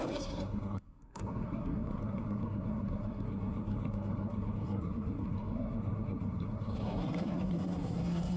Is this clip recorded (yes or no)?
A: no